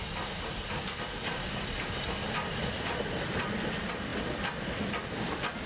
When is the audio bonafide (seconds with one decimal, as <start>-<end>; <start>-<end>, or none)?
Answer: 0.0-5.7